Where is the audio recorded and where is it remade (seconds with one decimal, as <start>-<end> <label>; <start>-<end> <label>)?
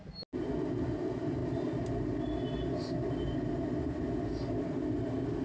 0.0-5.4 recorded